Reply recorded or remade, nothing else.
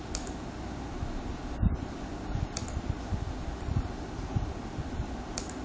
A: recorded